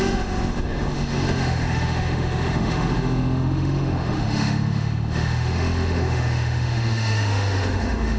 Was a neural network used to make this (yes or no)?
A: yes